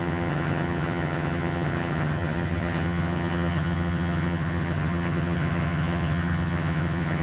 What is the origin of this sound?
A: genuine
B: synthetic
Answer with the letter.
B